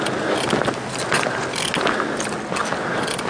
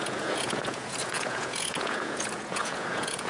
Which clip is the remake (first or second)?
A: second